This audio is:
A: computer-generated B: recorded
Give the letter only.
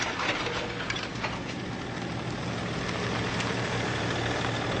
B